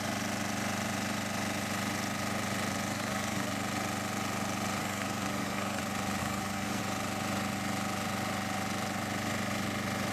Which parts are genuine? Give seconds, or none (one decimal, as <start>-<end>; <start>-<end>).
0.0-2.9; 3.5-4.8; 5.8-6.2; 6.8-10.1